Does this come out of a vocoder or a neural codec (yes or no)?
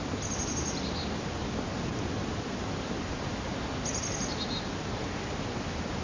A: no